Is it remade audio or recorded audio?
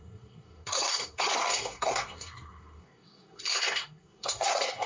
remade